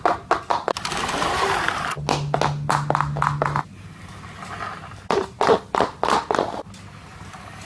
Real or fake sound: real